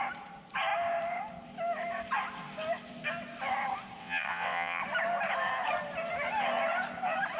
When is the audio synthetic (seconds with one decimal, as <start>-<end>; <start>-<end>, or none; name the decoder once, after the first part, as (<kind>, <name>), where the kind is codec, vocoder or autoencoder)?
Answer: 4.0-4.8 (vocoder, WaveNeXt)